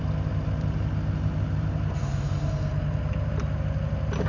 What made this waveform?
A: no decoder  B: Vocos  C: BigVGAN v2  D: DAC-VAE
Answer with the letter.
A